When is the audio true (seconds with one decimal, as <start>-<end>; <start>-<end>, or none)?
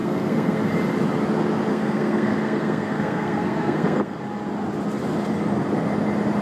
0.7-1.7; 4.2-6.4